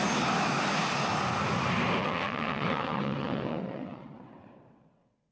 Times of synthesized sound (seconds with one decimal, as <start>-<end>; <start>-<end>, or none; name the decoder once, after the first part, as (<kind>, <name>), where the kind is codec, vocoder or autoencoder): 2.0-5.3 (vocoder, WaveNeXt)